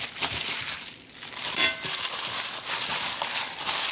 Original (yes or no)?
yes